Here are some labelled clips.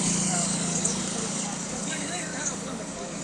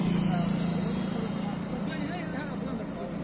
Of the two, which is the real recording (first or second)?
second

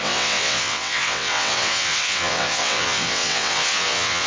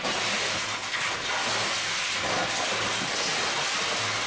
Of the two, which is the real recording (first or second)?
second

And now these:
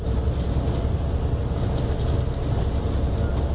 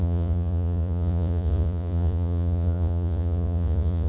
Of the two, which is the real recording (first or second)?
first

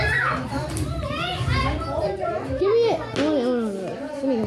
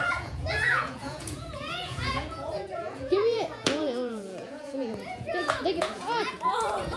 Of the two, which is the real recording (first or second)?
first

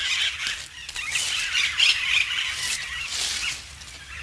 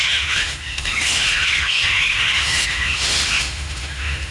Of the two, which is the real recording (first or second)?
first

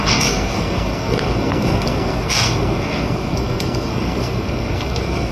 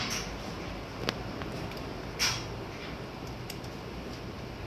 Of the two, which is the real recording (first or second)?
second